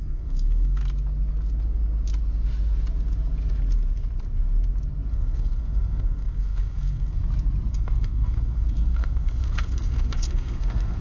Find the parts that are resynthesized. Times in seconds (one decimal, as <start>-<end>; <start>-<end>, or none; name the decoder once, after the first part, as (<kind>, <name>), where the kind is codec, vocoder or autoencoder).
0.0-0.8 (codec, SNAC); 5.1-7.2; 7.7-11.0